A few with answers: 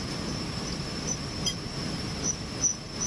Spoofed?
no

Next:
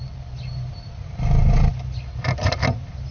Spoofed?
no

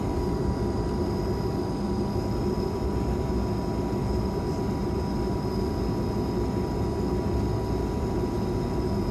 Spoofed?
no